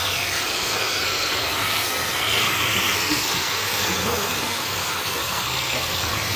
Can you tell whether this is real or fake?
fake